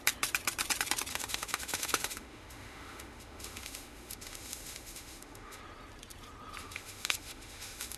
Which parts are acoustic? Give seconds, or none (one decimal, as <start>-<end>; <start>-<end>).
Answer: 0.0-1.1; 5.6-6.6